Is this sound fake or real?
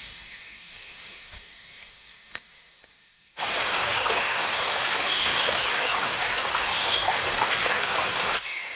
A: fake